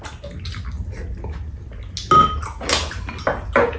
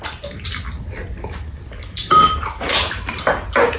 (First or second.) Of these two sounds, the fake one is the second